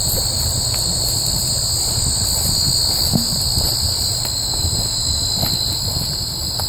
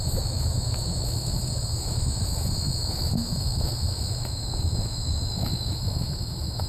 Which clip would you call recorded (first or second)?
first